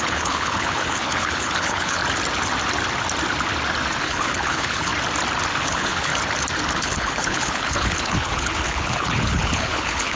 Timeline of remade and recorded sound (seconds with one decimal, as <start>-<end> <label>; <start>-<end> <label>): 0.0-2.0 remade; 2.0-4.0 recorded; 4.0-4.9 remade; 4.9-5.6 recorded; 5.6-6.1 remade; 6.1-6.7 recorded; 6.7-10.2 remade